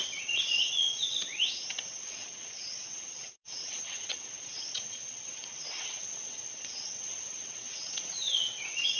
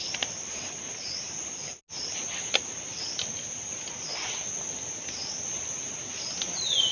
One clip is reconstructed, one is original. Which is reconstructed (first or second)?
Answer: first